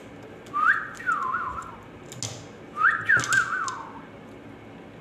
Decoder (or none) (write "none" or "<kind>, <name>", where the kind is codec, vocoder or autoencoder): none